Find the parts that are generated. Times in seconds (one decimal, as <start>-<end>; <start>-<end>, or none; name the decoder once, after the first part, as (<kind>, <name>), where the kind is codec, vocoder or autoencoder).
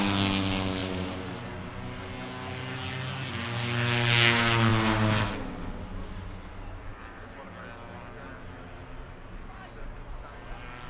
0.8-1.3 (vocoder, BigVGAN v2); 6.9-7.5